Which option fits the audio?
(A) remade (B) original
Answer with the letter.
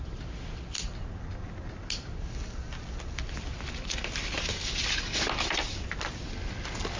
B